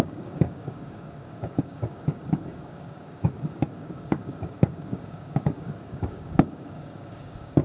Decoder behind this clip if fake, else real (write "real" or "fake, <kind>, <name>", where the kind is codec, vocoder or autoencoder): fake, codec, DAC